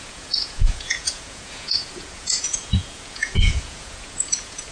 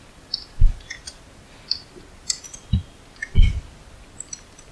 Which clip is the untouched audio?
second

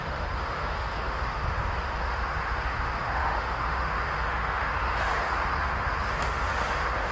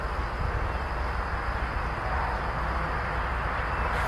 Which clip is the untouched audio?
second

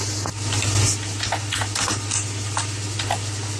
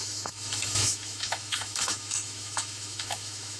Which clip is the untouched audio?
first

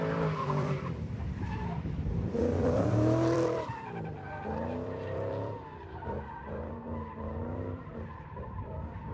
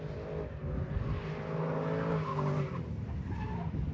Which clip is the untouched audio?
second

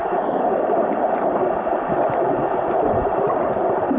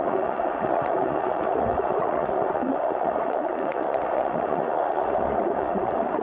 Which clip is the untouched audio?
first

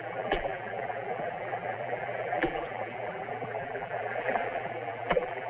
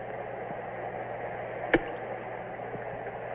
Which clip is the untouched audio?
second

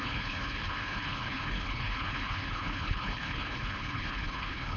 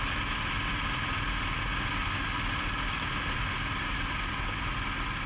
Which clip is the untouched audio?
second